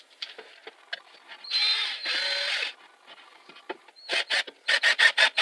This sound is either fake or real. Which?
real